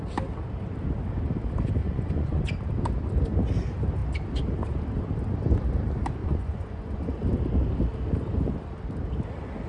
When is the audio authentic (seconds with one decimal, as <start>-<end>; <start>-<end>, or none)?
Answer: 0.0-1.8; 2.4-6.2; 7.1-9.7